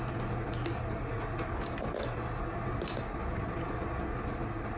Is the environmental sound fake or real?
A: real